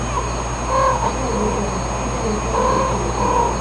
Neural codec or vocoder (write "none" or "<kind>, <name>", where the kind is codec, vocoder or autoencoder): none